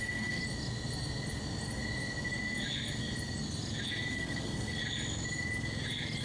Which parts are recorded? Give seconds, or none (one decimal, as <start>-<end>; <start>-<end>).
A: 0.4-4.1; 4.8-6.2